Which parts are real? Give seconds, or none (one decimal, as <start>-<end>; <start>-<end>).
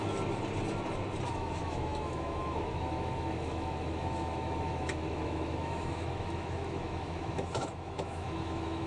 0.0-1.3